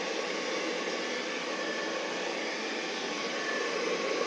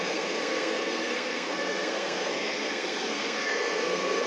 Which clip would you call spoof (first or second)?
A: second